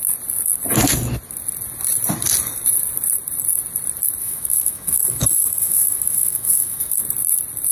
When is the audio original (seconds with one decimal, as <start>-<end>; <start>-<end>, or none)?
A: 0.0-4.2; 7.0-7.7